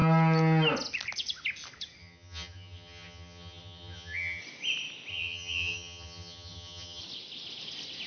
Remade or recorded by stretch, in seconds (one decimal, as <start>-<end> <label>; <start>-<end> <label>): 0.0-2.0 recorded; 2.0-4.4 remade; 4.4-5.1 recorded; 5.1-7.0 remade; 7.0-8.1 recorded